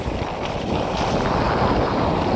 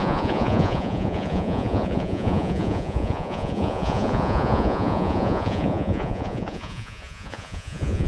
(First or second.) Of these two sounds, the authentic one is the first